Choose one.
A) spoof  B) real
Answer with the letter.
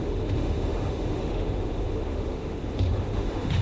A